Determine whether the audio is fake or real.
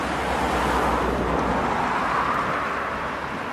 real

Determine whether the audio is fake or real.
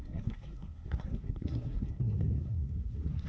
fake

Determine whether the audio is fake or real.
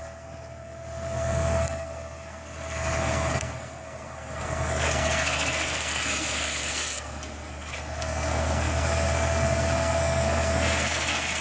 fake